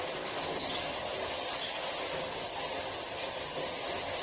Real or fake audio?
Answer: real